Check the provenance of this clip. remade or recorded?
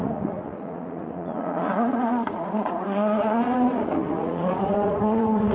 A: remade